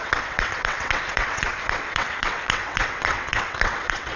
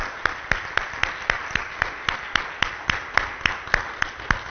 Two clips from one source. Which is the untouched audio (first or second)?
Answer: second